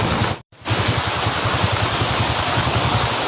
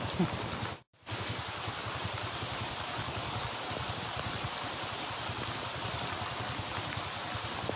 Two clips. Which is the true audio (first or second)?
first